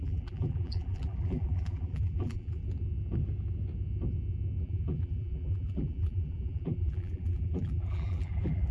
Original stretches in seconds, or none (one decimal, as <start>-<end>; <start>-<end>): 2.6-4.6

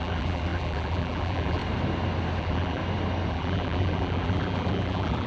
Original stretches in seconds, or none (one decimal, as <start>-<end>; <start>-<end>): 1.6-2.4; 2.8-3.3

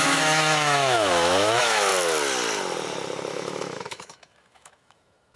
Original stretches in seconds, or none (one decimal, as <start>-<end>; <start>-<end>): 1.9-3.3

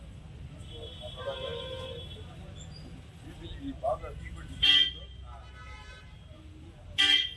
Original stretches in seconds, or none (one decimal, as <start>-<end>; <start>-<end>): 0.0-7.4

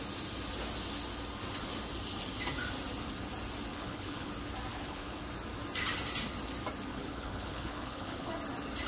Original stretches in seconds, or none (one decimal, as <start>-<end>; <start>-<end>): 0.0-3.7; 4.3-4.7; 5.2-6.9; 8.3-8.9

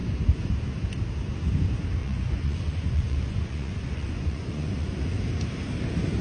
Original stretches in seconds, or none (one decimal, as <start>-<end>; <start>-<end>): 0.0-2.0; 4.9-6.2